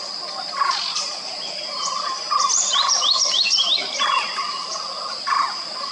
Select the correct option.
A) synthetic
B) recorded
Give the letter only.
B